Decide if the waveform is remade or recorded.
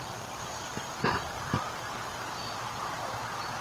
recorded